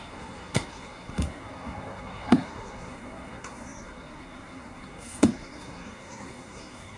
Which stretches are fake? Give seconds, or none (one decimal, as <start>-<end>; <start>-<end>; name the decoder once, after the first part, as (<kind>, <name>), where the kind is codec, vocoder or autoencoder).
0.0-7.0 (codec, SNAC)